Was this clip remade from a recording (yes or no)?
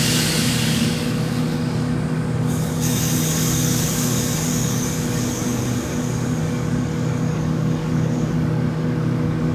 yes